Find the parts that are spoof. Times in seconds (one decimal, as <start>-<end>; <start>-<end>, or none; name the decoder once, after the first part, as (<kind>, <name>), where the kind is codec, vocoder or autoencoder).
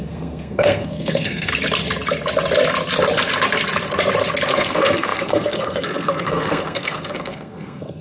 0.0-1.5 (codec, SNAC); 4.5-8.0